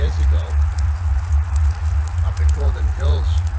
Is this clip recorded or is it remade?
remade